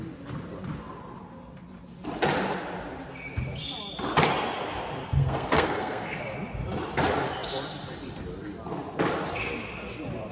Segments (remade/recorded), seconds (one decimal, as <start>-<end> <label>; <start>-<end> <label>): 0.0-5.0 recorded; 5.0-6.2 remade; 6.2-10.3 recorded